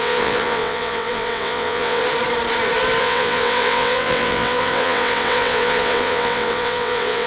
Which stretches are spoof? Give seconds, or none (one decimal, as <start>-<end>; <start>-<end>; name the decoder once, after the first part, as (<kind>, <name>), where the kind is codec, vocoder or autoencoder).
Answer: 0.0-2.0 (vocoder, WaveNeXt); 3.0-7.3